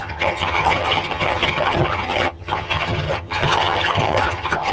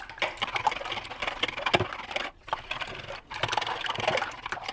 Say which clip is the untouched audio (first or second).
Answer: second